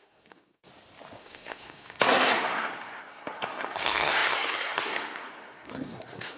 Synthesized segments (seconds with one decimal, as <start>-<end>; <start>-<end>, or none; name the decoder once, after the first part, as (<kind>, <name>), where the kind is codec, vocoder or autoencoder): 0.0-0.7 (codec, SNAC); 1.2-6.4